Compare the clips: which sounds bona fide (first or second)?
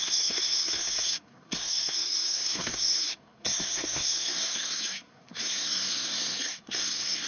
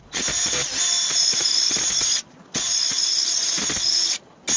second